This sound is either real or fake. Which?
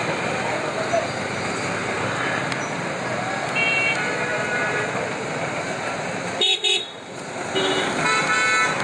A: real